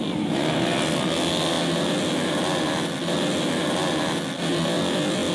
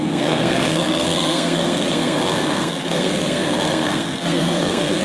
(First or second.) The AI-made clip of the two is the second